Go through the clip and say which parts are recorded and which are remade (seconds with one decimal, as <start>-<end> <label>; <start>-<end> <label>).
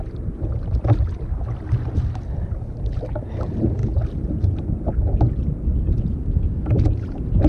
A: 0.0-7.5 recorded